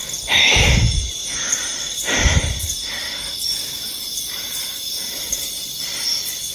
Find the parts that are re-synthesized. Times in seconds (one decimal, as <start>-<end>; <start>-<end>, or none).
none